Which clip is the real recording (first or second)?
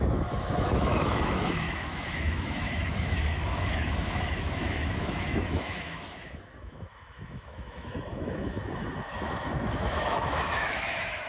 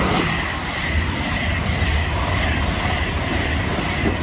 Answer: second